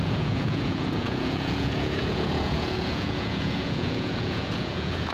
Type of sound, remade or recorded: remade